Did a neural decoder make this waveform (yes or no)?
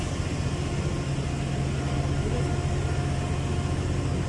no